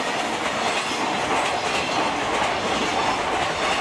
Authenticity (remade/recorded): recorded